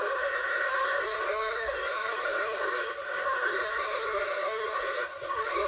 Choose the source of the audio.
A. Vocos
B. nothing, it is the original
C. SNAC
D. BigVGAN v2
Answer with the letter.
C